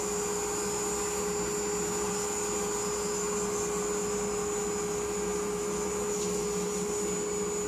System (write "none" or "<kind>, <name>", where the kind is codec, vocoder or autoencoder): none